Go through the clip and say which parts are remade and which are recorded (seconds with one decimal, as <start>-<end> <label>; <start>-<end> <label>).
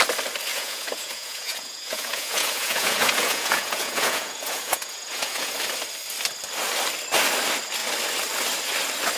0.0-0.5 recorded; 0.5-5.5 remade; 5.5-9.2 recorded